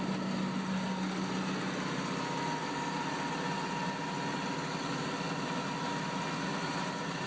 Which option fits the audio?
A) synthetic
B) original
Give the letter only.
B